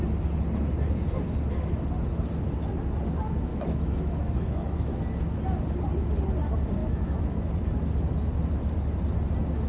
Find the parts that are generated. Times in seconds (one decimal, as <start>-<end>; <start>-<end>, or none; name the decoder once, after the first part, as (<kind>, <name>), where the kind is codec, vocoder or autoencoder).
3.5-5.0 (autoencoder, DAC-VAE); 6.8-7.4